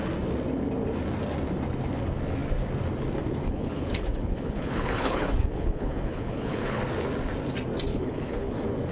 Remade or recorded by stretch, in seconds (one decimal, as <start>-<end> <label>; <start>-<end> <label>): 0.0-3.4 recorded; 3.4-6.8 remade; 6.8-7.9 recorded; 7.9-8.5 remade; 8.5-8.9 recorded